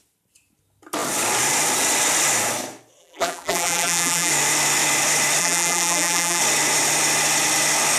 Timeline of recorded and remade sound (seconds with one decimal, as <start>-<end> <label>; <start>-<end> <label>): 0.0-3.0 recorded; 3.0-4.3 remade; 4.3-5.4 recorded; 5.4-6.4 remade; 6.4-8.0 recorded